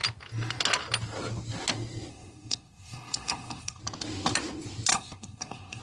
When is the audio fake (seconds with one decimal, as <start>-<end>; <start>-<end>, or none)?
2.1-3.8; 4.9-5.8

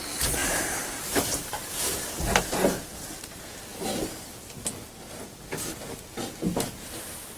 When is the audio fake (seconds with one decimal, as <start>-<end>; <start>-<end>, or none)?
0.4-2.0

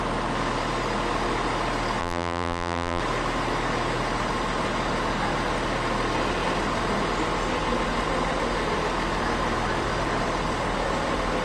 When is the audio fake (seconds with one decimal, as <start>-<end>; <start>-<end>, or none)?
2.0-3.0

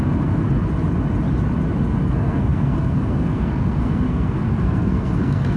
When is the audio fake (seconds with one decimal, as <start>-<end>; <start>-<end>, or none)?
0.0-0.4; 2.1-5.6

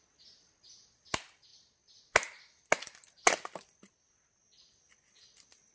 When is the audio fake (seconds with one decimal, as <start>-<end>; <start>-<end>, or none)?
none